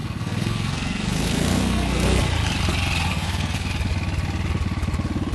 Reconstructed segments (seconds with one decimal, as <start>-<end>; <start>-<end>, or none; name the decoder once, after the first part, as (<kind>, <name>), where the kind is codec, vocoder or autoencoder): 0.0-2.2 (codec, SNAC); 3.1-3.7